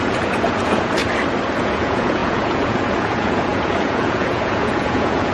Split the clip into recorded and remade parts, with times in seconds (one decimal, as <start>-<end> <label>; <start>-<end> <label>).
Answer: 0.0-1.0 remade; 1.0-1.6 recorded; 1.6-5.3 remade